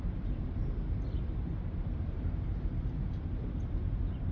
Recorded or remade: remade